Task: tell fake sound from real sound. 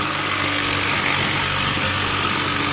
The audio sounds fake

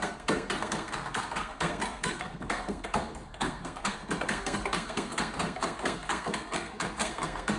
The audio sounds fake